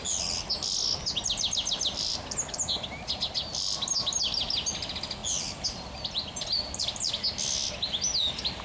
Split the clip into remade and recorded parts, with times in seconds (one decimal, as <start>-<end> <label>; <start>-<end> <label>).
0.0-8.6 recorded

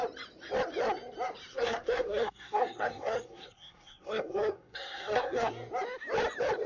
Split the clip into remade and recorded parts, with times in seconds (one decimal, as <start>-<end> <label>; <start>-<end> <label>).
0.0-1.5 recorded; 1.5-5.5 remade; 5.5-6.7 recorded